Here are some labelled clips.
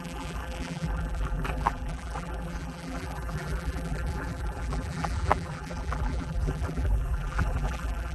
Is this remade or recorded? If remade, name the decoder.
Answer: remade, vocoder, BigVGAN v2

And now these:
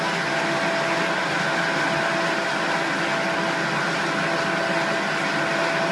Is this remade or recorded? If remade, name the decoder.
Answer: recorded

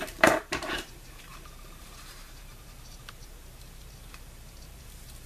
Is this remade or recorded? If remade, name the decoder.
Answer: remade, vocoder, BigVGAN v2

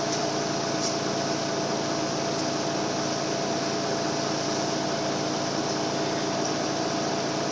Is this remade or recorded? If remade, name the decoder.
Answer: recorded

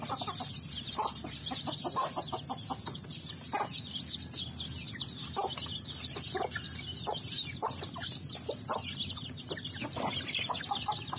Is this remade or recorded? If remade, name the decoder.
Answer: recorded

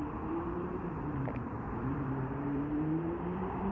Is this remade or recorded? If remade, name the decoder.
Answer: remade, vocoder, BigVGAN v2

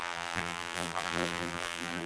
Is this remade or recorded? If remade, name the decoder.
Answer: remade, vocoder, BigVGAN v2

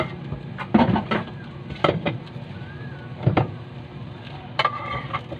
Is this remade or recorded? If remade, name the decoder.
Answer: remade, vocoder, BigVGAN v2